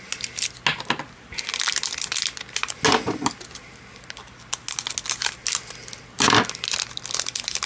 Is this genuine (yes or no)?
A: yes